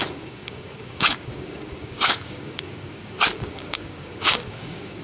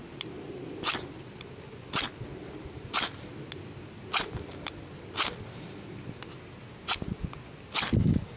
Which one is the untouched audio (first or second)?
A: second